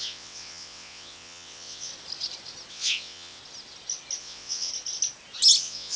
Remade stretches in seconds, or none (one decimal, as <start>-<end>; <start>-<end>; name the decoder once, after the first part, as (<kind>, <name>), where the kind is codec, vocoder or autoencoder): 0.0-1.9 (vocoder, WaveNeXt); 2.7-3.4; 4.2-4.7; 5.6-6.0